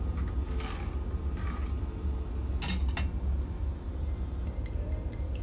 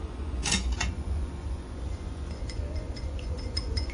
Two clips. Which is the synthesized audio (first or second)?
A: second